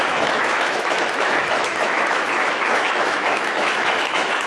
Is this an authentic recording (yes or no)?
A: no